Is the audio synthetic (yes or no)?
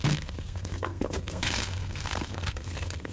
yes